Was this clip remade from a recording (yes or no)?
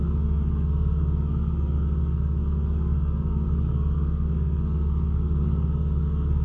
yes